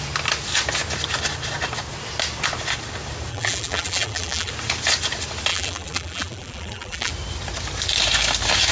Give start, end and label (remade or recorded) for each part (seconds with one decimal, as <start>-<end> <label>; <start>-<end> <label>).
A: 0.0-3.3 recorded; 3.3-4.5 remade; 4.5-5.5 recorded; 5.5-7.1 remade; 7.1-8.7 recorded